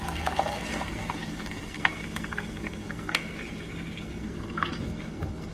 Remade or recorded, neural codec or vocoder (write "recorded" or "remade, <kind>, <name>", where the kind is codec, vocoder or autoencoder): remade, codec, SNAC